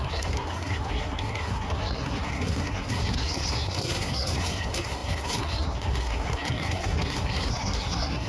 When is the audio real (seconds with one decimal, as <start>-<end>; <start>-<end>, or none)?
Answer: none